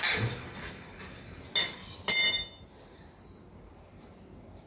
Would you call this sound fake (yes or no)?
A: no